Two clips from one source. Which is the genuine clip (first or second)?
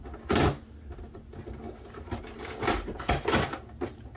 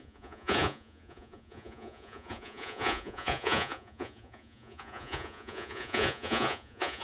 first